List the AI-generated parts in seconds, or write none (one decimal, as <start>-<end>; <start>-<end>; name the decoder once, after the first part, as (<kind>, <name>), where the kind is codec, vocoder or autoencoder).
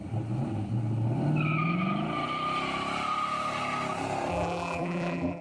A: 4.3-5.4 (vocoder, BigVGAN v2)